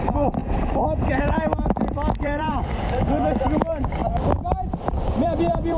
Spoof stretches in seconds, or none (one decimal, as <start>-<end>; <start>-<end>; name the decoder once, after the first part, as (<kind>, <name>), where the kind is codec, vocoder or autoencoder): 0.0-4.0 (vocoder, BigVGAN v2); 4.9-5.8